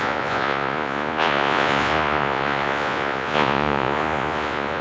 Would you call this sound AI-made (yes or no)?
yes